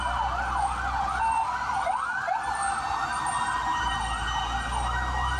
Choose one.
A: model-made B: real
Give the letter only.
B